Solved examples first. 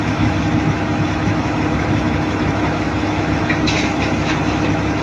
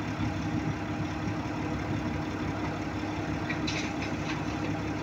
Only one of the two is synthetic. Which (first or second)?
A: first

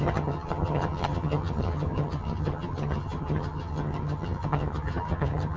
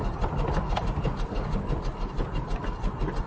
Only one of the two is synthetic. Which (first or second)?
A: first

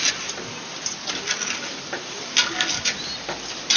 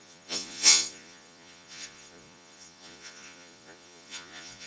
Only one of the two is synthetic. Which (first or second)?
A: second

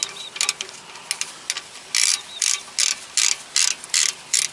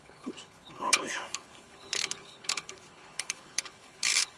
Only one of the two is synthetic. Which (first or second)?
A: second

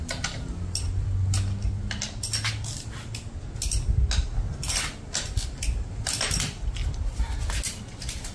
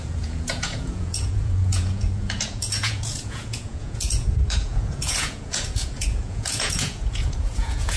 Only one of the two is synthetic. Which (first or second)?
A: second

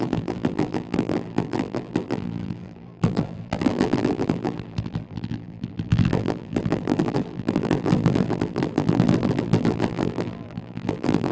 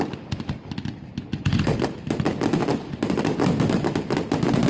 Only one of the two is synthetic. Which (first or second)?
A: first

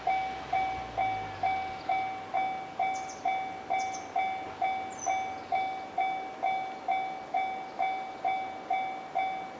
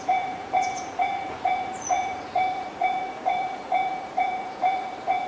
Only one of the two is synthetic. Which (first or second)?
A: second